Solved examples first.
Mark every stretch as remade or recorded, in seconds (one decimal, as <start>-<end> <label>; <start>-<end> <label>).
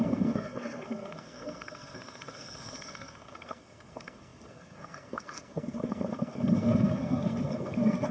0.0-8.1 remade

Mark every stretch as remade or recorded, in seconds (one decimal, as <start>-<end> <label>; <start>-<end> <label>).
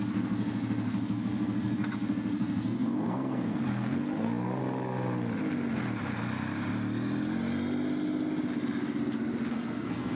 0.0-4.6 remade; 4.6-9.5 recorded; 9.5-10.1 remade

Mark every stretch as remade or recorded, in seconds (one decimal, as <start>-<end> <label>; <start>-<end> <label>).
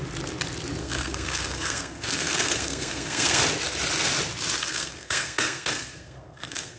0.0-0.8 recorded; 0.8-3.4 remade; 3.4-4.6 recorded; 4.6-6.8 remade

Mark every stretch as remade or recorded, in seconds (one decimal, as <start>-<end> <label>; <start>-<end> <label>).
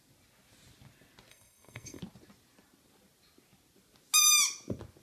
0.0-1.3 recorded; 1.3-2.0 remade; 2.0-5.0 recorded